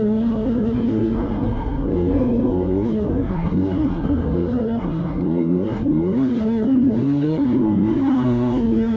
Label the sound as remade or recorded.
remade